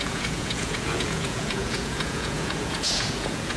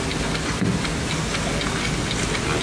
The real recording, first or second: second